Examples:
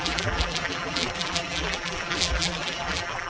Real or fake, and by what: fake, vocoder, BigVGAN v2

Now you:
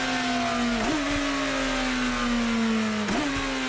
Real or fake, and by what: real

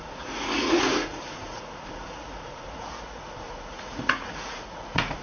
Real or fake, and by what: fake, vocoder, Vocos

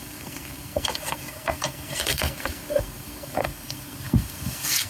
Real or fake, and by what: fake, codec, SNAC